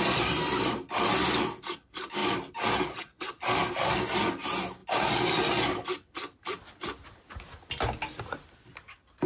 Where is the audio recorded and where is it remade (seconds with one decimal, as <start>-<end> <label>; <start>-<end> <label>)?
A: 0.0-9.3 recorded